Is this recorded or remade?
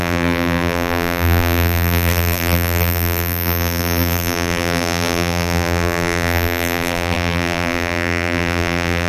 remade